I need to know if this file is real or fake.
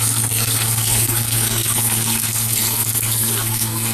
fake